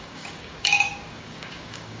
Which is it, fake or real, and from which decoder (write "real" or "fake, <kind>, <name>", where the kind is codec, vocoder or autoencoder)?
fake, codec, DAC